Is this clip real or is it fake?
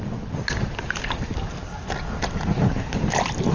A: real